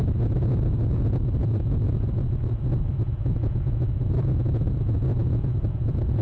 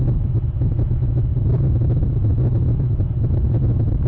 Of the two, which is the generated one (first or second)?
first